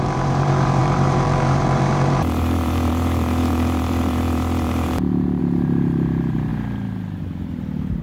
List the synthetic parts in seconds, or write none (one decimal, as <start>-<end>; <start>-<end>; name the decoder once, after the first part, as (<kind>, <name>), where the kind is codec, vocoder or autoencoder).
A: 0.0-6.5 (vocoder, BigVGAN v2)